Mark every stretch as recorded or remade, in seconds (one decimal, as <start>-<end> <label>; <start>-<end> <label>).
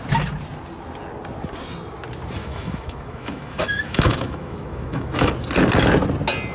0.0-2.4 recorded; 2.4-5.3 remade; 5.3-6.5 recorded